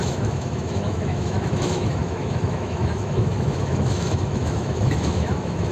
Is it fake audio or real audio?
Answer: fake